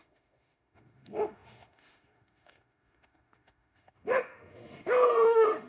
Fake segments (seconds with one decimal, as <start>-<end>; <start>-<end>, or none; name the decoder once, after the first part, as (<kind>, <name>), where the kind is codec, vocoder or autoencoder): 0.0-5.7 (autoencoder, DAC-VAE)